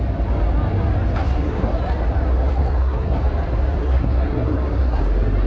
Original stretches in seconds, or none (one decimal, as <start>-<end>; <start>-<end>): 0.0-1.2; 1.8-2.5; 3.2-3.8; 5.0-5.5